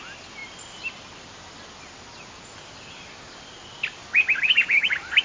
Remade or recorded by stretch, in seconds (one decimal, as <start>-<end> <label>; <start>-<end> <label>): 0.0-4.0 recorded; 4.0-5.2 remade